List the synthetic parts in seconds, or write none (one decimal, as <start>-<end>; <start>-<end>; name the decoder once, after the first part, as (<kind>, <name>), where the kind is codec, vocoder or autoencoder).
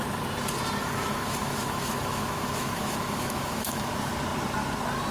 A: 0.8-3.9 (autoencoder, DAC-VAE)